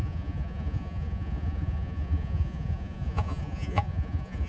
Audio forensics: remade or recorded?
remade